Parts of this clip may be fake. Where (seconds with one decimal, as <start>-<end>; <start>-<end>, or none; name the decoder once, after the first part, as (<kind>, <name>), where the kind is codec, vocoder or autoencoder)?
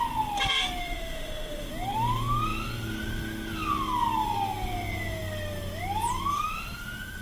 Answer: 0.8-1.7 (autoencoder, DAC-VAE)